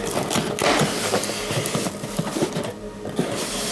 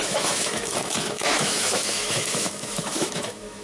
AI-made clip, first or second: second